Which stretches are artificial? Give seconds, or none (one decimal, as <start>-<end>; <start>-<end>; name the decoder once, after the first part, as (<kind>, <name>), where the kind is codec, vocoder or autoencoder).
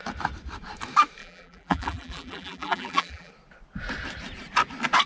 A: 1.2-3.3 (vocoder, BigVGAN v2)